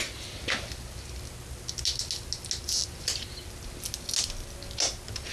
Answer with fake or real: real